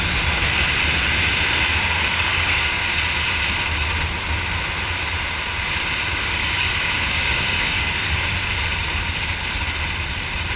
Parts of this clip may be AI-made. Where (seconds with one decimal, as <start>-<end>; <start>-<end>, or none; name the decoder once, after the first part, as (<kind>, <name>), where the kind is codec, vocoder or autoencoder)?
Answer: 2.1-2.8 (codec, DAC); 6.1-8.6